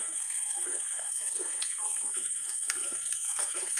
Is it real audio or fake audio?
fake